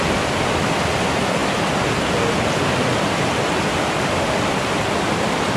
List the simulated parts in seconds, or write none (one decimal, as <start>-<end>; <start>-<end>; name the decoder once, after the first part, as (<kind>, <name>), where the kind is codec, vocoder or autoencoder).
none

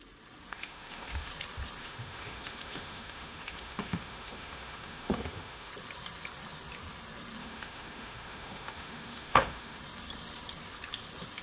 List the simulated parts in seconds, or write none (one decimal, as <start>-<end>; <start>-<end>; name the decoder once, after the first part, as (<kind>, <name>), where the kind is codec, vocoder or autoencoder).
0.5-1.3 (autoencoder, DAC-VAE); 1.8-5.7; 7.4-9.8

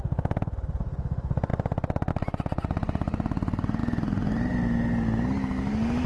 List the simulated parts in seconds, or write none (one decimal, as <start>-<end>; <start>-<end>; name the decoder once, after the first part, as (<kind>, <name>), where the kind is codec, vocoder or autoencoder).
none

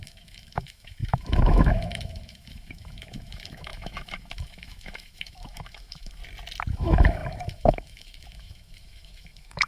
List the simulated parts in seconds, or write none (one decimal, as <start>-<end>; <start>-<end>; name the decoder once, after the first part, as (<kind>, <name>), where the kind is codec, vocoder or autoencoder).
0.0-6.2 (autoencoder, DAC-VAE); 6.7-9.7

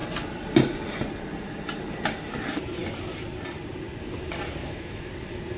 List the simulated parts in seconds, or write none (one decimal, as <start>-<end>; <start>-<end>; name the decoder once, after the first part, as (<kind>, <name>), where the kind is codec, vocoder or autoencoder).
4.6-5.1 (autoencoder, DAC-VAE)

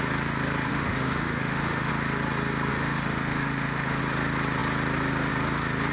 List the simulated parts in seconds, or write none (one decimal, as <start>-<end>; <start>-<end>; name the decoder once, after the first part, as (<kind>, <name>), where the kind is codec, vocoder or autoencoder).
0.7-1.9 (autoencoder, DAC-VAE); 2.7-4.0

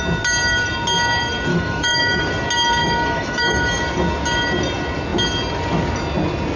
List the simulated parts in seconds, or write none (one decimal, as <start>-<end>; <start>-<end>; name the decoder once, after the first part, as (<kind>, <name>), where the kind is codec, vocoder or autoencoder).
1.5-2.3 (autoencoder, DAC-VAE); 2.8-3.8